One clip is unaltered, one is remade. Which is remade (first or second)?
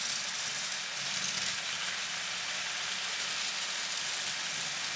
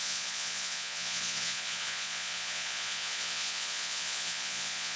second